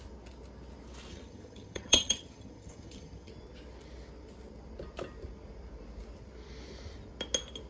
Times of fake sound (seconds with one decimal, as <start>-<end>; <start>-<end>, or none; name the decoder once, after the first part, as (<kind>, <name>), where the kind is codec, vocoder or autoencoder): 1.1-3.3 (vocoder, HiFi-GAN)